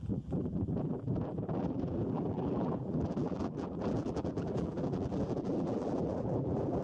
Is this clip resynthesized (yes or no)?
yes